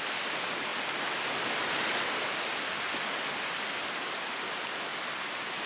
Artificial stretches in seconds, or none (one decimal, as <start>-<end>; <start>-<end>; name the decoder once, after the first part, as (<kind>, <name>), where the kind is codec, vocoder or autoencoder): none